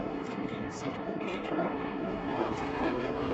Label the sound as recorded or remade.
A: remade